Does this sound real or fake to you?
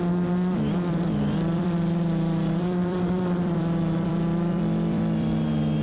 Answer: fake